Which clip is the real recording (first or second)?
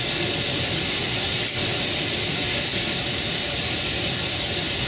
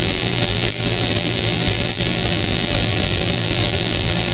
first